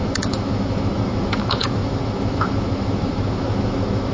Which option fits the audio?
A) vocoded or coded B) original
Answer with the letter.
A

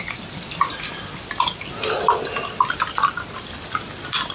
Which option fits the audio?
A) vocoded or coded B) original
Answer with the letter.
B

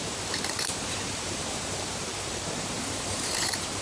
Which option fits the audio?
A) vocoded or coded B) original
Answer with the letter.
A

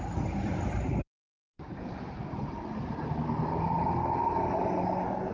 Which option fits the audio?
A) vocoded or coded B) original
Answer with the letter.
B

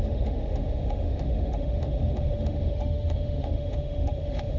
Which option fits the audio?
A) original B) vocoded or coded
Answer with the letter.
B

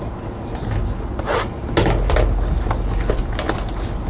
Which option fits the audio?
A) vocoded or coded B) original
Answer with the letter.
B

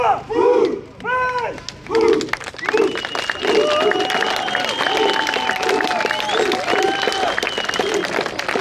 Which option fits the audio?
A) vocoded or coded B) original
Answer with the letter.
B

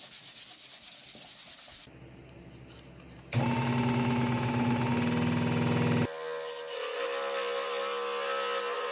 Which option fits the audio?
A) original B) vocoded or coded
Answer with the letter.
A